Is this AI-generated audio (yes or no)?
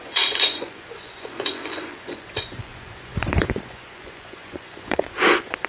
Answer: yes